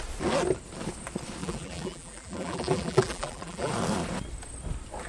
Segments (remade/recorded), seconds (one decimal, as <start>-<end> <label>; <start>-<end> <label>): 0.0-1.4 recorded; 1.4-3.7 remade; 3.7-5.1 recorded